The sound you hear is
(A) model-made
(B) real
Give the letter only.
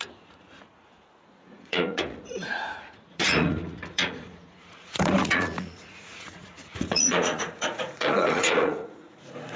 A